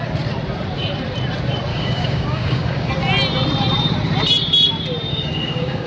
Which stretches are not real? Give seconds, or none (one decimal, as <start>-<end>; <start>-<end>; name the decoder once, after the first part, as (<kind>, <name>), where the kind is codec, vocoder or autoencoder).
1.7-2.9 (codec, DAC); 5.1-5.9